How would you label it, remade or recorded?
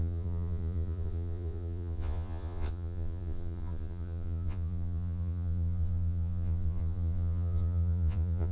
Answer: remade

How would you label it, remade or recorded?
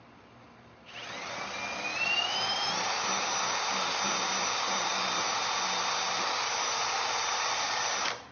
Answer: recorded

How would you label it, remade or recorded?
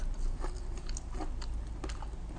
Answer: recorded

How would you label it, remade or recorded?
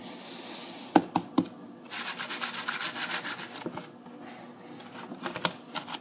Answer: recorded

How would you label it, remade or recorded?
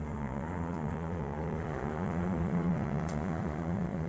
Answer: remade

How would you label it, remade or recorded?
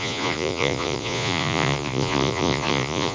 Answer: remade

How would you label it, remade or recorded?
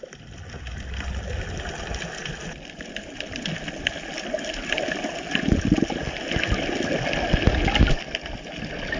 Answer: recorded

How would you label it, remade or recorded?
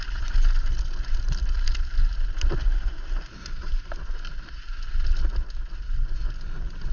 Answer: recorded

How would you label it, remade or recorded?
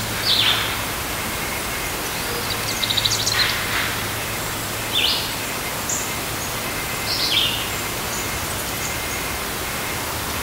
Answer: recorded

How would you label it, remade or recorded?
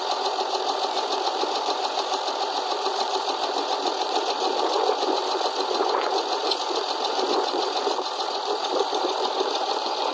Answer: remade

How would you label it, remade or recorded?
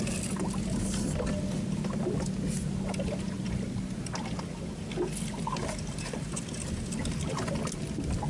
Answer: recorded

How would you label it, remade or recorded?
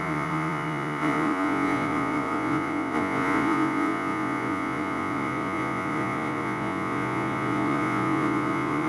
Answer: remade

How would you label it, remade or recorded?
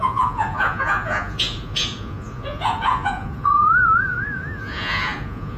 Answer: remade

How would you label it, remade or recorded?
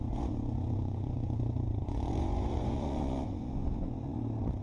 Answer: remade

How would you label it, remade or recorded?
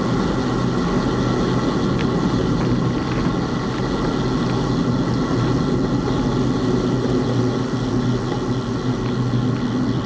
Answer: recorded